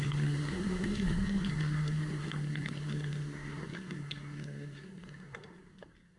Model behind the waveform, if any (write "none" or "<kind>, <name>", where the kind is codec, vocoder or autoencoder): codec, SNAC